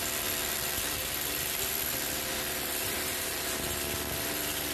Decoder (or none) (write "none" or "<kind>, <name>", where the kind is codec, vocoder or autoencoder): vocoder, BigVGAN v2